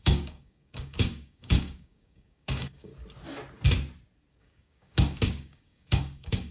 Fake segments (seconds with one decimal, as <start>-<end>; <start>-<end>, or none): 0.0-2.9; 4.4-6.5